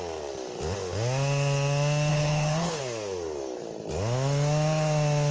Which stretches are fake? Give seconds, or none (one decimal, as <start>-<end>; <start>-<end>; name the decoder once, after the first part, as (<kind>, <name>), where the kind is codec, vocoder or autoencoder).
2.1-2.8 (codec, HILCodec)